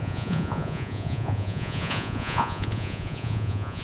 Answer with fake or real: fake